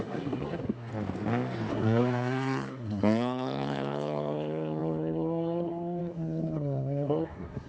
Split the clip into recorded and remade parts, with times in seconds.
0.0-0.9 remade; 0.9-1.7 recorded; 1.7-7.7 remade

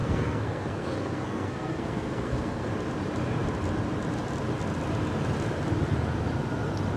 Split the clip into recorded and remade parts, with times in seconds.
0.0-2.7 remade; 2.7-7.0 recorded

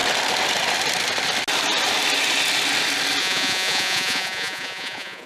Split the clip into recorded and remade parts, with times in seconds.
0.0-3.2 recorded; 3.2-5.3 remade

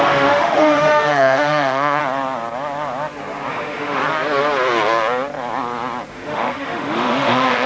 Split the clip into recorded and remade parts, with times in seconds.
0.0-2.0 remade; 2.0-3.5 recorded; 3.5-4.0 remade; 4.0-6.1 recorded; 6.1-7.7 remade